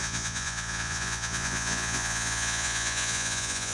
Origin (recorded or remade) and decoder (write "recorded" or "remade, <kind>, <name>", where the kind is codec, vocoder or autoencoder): remade, vocoder, Vocos